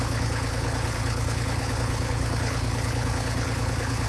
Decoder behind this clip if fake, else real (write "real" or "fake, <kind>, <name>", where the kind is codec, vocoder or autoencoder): fake, codec, HILCodec